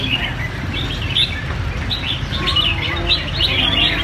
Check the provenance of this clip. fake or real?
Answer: real